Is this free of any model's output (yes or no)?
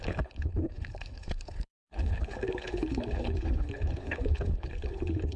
no